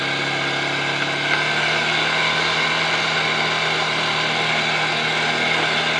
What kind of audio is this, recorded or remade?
recorded